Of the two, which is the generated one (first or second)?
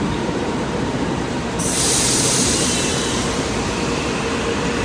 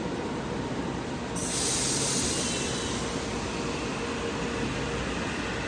first